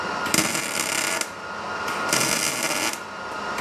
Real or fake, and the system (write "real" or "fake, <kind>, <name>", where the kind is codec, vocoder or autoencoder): real